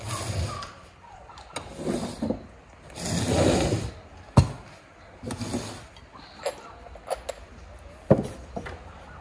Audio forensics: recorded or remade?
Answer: recorded